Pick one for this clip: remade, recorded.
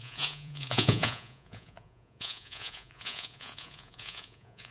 remade